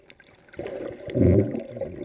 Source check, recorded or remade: recorded